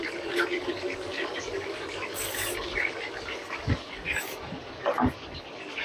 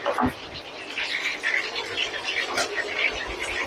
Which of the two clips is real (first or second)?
second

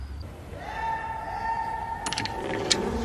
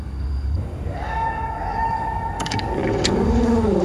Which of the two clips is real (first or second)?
first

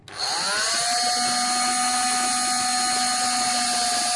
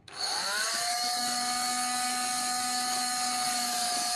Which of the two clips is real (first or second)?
first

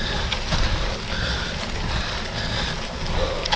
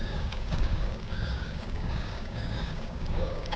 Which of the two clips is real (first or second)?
first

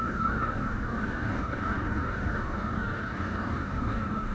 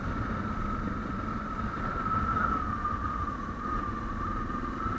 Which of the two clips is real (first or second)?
second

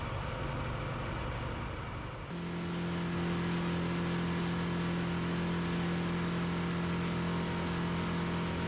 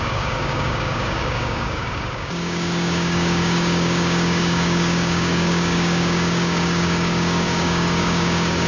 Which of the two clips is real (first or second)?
first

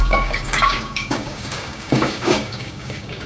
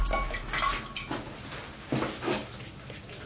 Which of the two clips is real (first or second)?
second